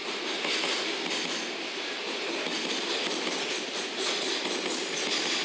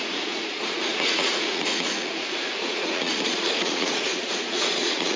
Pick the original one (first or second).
first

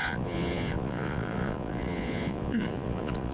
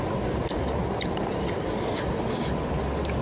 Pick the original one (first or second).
second